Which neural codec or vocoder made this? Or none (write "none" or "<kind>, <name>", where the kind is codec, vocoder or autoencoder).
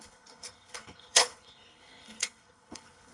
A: codec, HILCodec